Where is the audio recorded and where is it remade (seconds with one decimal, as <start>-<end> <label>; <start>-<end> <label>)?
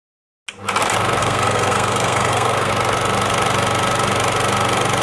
0.0-1.2 recorded; 1.2-2.7 remade; 2.7-5.0 recorded